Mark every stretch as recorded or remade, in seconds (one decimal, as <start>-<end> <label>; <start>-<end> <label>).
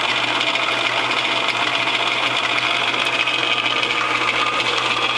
0.0-5.2 recorded